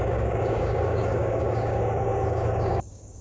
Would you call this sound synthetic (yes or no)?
yes